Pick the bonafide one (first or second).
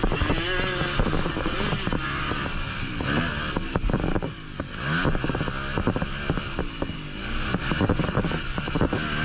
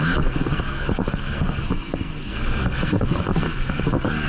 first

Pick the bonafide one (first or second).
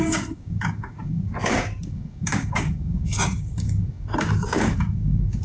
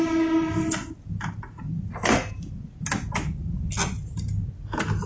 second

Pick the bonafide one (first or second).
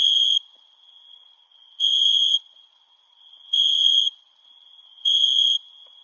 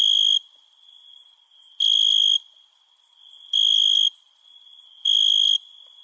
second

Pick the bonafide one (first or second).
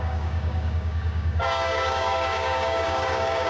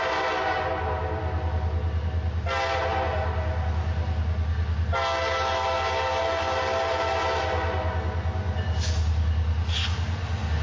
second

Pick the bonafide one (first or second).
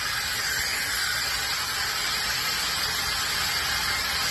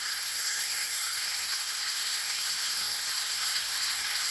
first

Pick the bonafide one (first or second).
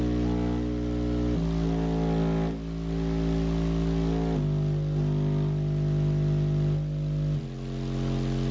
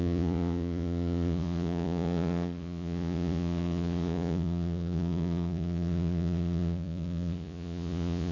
first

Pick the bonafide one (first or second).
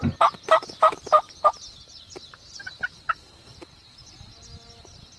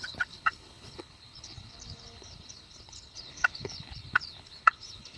first